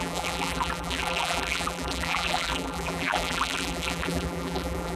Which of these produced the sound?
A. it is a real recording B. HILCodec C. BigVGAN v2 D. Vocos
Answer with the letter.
C